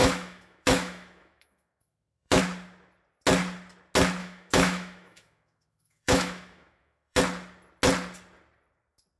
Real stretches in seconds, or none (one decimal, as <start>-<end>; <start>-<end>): 2.4-4.2; 7.2-9.2